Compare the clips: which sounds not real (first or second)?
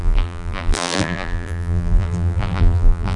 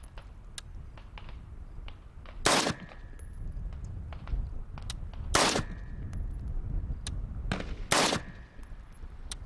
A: first